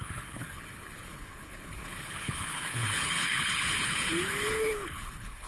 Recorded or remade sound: remade